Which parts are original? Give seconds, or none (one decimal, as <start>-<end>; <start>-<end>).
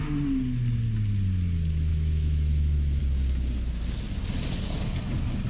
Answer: 0.0-1.9; 3.0-5.5